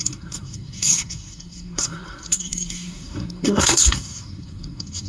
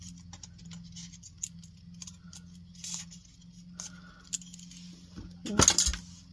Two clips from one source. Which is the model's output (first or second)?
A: first